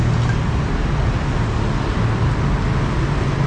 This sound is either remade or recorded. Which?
recorded